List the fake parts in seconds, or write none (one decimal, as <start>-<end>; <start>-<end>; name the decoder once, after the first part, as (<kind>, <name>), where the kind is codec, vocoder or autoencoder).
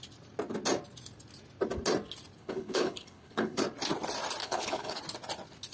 2.4-3.6 (codec, HILCodec); 4.4-5.0